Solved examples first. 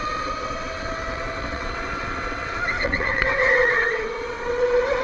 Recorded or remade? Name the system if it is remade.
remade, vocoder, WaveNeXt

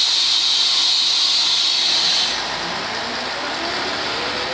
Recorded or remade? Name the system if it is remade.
recorded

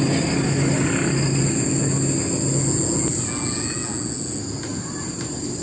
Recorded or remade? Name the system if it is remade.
recorded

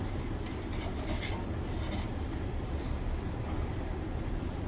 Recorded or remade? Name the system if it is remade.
recorded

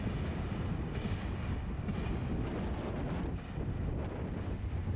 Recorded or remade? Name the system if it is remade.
recorded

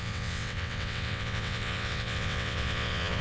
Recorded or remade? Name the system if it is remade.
remade, vocoder, WaveNeXt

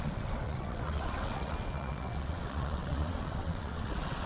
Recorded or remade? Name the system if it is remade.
remade, vocoder, WaveNeXt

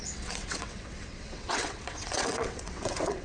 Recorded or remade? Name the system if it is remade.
remade, vocoder, WaveNeXt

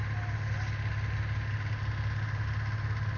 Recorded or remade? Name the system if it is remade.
recorded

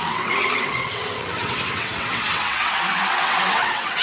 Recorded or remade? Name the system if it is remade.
remade, vocoder, WaveNeXt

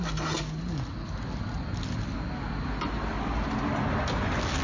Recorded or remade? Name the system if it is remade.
recorded